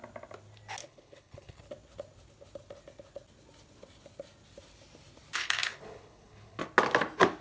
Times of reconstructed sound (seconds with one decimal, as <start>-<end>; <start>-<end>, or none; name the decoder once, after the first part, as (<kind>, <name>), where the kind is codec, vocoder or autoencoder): 0.8-1.6 (codec, HILCodec); 5.4-6.6